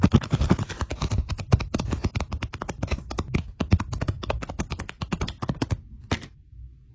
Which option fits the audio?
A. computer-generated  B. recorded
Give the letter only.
B